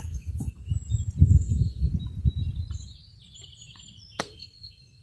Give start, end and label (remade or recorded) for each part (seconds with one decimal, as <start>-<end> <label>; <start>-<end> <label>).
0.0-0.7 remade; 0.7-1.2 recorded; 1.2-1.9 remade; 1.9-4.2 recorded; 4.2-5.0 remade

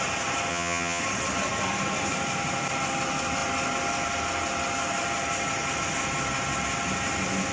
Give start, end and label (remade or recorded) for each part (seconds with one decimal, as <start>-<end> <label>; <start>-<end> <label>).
0.0-0.5 recorded; 0.5-1.0 remade; 1.0-7.5 recorded

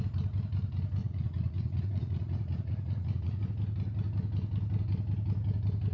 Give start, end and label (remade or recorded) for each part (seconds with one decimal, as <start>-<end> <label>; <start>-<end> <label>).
0.0-1.0 recorded; 1.0-3.4 remade; 3.4-5.9 recorded

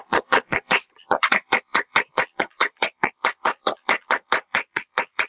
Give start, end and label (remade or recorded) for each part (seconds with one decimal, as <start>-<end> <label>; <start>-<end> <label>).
0.0-5.3 remade

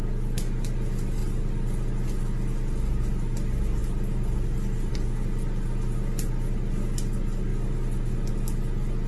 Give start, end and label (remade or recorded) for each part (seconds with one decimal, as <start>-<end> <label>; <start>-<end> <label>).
0.0-9.1 recorded